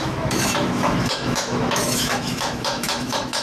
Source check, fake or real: fake